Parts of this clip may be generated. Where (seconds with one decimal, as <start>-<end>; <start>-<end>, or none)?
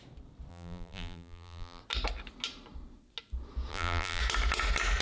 0.5-1.8; 3.7-4.2